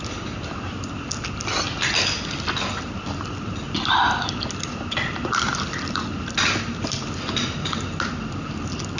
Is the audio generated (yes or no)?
no